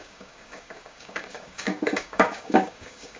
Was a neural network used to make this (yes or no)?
yes